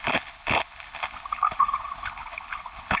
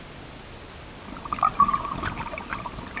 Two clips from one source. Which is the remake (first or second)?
first